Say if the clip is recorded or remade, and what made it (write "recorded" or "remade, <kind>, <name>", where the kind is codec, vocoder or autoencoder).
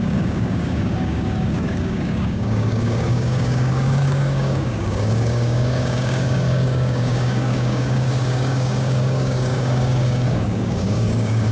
remade, codec, DAC